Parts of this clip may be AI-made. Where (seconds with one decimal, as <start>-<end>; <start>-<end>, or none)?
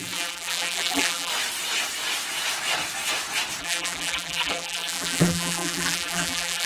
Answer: 0.0-1.3; 3.6-6.7